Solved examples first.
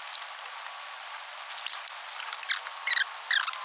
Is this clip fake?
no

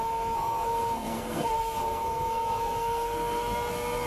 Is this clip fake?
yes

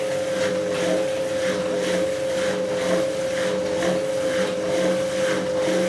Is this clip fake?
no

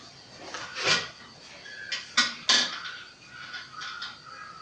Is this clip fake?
no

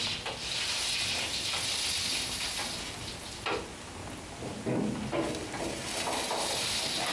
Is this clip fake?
no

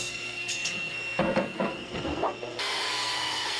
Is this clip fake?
yes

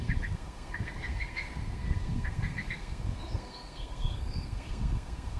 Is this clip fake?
yes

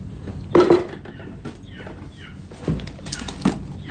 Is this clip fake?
no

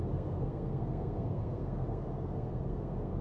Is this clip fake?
yes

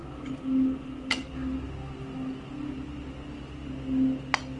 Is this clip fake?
no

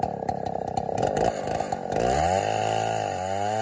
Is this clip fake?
no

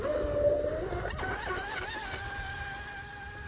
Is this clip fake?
no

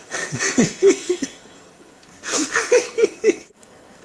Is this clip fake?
yes